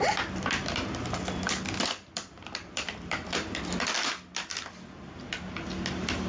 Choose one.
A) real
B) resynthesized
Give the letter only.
B